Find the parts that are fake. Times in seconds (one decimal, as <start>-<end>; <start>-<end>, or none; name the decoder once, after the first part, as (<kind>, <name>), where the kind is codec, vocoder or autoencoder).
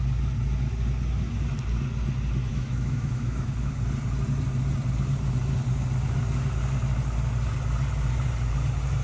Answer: 2.5-3.7 (autoencoder, DAC-VAE)